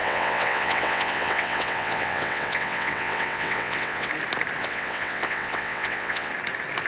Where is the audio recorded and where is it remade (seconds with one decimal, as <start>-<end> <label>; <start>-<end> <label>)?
0.0-4.1 remade; 4.1-4.6 recorded; 4.6-6.3 remade; 6.3-6.9 recorded